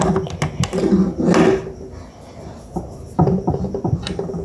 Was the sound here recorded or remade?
recorded